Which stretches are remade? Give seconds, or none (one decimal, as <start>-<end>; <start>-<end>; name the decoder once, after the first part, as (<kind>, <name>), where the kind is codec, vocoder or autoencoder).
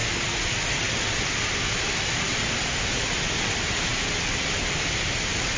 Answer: none